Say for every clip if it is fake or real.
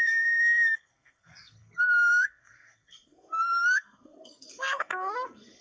fake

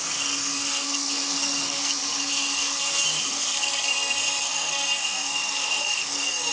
fake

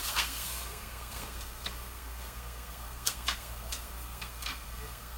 fake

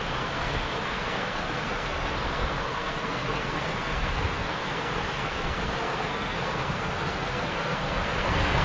fake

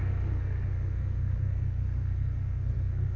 fake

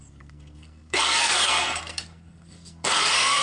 fake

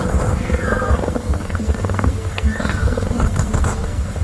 fake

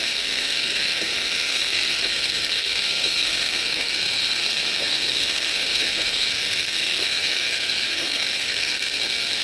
fake